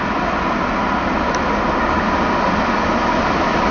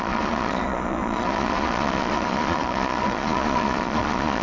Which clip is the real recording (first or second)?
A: first